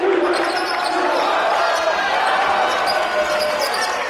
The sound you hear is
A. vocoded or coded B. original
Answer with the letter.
B